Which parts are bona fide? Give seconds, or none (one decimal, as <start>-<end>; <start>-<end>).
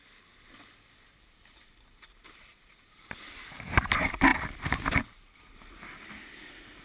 0.0-2.5; 3.2-6.8